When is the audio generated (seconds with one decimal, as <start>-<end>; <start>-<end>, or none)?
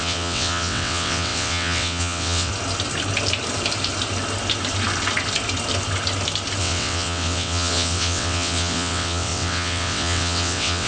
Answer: 0.0-2.5; 6.6-10.9